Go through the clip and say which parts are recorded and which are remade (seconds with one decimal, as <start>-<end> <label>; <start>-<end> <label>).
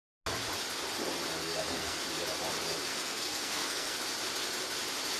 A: 0.0-1.4 recorded; 1.4-2.0 remade; 2.0-2.9 recorded; 2.9-4.0 remade; 4.0-5.2 recorded